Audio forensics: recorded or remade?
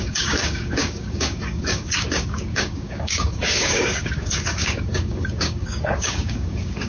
remade